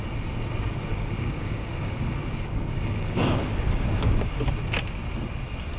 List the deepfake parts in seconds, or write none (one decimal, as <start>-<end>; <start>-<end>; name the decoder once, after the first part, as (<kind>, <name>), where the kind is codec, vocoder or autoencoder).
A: 0.9-4.4 (codec, DAC)